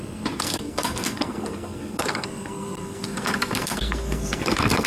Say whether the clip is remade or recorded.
remade